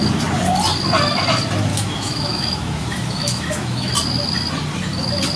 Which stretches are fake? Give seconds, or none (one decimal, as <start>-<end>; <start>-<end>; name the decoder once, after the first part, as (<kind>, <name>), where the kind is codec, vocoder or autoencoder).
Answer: 1.7-3.9 (autoencoder, DAC-VAE)